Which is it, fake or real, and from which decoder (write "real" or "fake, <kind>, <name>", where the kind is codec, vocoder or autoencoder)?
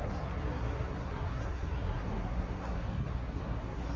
fake, codec, SNAC